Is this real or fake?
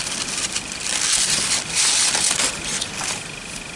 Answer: real